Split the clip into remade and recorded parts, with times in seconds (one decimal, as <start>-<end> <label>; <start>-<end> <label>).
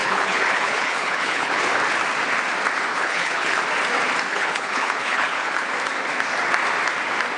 0.0-1.6 remade; 1.6-2.9 recorded; 2.9-3.6 remade; 3.6-4.3 recorded; 4.3-5.7 remade; 5.7-7.4 recorded